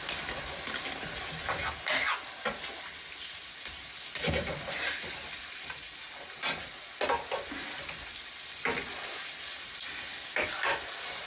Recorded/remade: recorded